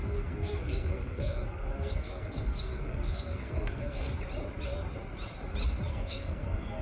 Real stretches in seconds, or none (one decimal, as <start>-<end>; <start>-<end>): 4.1-5.9